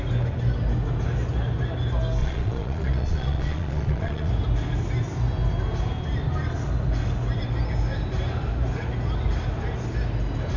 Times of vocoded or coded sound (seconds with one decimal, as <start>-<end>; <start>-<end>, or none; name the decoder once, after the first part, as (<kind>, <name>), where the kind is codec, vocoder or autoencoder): 2.2-4.3 (vocoder, Vocos)